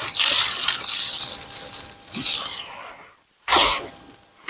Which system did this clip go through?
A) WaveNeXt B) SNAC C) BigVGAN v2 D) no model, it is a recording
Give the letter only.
C